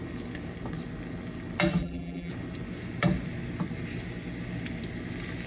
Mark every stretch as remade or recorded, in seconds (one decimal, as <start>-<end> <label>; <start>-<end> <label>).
0.0-1.8 recorded; 1.8-2.3 remade; 2.3-5.5 recorded